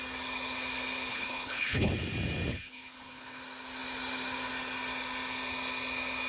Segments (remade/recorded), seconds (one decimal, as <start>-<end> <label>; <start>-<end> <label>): 0.0-1.1 recorded; 1.1-1.9 remade; 1.9-2.5 recorded; 2.5-3.4 remade; 3.4-6.3 recorded